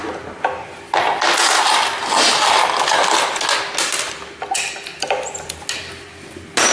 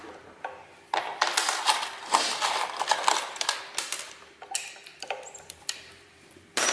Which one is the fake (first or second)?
second